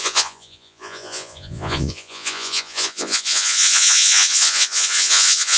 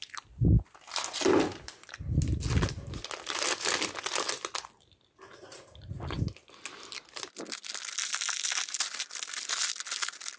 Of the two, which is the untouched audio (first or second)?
second